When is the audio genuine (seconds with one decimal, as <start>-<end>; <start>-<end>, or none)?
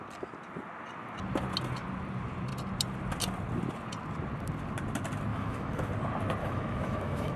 0.0-5.3; 5.9-6.4